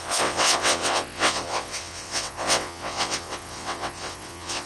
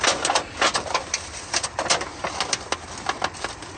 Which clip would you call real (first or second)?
second